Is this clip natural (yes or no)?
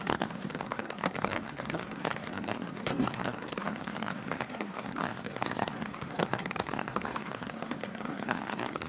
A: no